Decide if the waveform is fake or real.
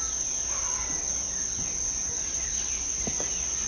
real